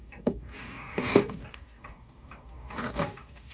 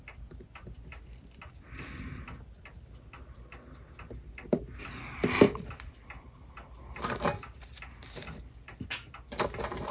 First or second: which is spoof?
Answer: first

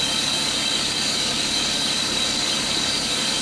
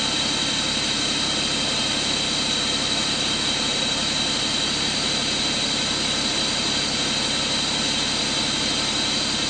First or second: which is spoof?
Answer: first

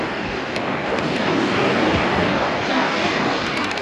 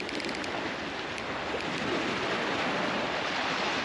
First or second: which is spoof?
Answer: first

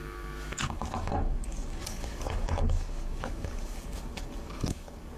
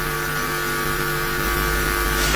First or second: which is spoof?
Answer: first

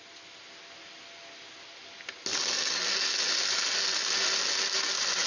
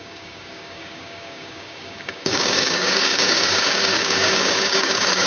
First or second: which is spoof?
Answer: second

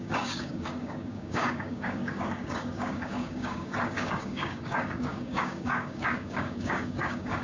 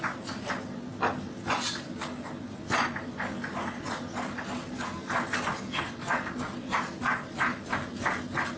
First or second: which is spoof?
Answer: first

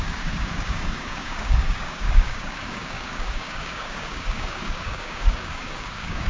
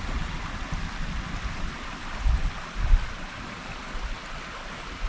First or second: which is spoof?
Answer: first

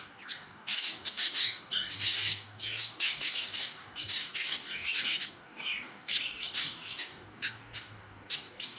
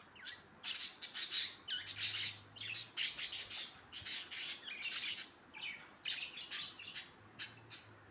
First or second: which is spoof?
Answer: first